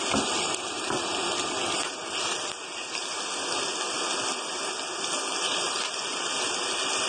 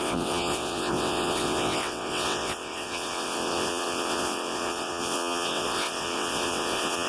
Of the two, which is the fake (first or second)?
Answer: second